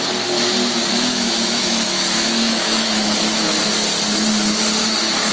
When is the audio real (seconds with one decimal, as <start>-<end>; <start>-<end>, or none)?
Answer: 0.0-0.9; 3.7-4.8